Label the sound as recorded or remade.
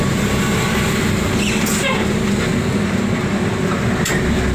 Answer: recorded